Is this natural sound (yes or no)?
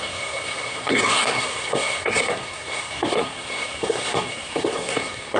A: no